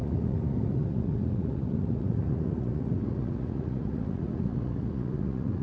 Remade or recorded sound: remade